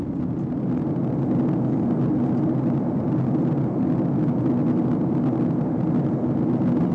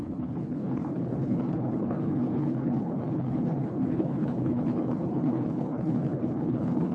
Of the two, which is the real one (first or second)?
first